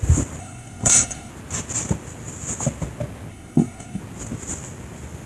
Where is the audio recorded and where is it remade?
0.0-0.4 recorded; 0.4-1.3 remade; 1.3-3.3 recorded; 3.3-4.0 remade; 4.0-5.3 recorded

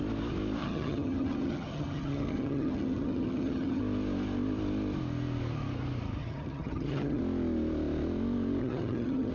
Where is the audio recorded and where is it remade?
0.0-0.6 recorded; 0.6-3.8 remade; 3.8-6.2 recorded; 6.2-7.2 remade; 7.2-8.6 recorded; 8.6-9.3 remade

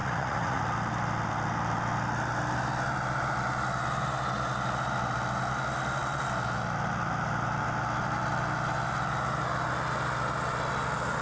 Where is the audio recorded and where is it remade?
0.0-0.6 remade; 0.6-11.2 recorded